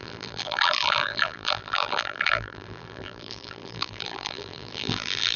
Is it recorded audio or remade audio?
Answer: remade